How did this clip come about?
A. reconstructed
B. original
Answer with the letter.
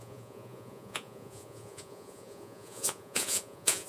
A